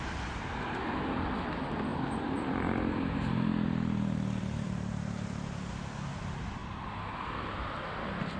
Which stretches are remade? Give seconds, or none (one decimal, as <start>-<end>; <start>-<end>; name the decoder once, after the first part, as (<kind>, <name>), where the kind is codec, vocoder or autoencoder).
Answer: 0.0-6.6 (vocoder, BigVGAN v2); 7.4-8.4

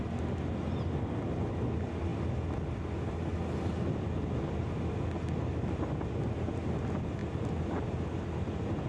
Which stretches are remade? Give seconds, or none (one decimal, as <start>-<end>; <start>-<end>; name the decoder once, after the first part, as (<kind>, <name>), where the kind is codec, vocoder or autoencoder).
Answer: none

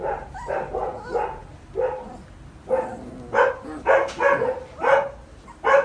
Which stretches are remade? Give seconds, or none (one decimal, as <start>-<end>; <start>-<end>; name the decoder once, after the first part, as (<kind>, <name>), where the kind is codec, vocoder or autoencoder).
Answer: none

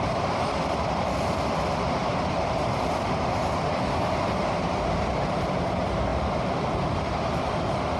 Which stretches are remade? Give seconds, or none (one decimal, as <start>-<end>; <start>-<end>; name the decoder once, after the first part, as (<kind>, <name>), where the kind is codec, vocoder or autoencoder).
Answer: 2.0-2.8 (vocoder, BigVGAN v2); 6.1-7.5

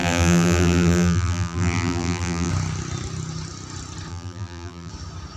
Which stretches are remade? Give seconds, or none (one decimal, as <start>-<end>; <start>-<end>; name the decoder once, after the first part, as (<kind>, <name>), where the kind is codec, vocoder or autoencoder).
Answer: 0.0-2.5 (vocoder, BigVGAN v2); 4.1-4.9

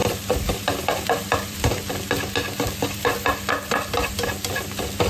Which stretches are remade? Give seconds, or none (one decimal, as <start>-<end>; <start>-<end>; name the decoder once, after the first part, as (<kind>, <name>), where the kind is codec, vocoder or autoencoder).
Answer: 0.0-1.6 (vocoder, BigVGAN v2)

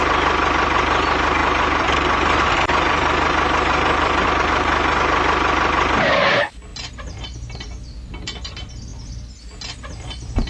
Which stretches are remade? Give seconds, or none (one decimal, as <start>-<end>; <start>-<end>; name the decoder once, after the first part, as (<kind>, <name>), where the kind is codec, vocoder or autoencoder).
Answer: 1.4-4.4 (vocoder, BigVGAN v2); 6.7-7.2

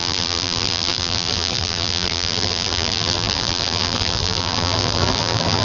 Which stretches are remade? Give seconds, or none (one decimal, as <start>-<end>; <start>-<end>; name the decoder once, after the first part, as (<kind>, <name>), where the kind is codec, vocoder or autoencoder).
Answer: 0.0-5.6 (vocoder, BigVGAN v2)